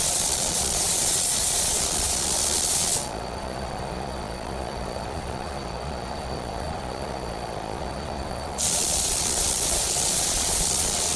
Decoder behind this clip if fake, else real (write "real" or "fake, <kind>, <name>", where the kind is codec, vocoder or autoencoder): fake, vocoder, Vocos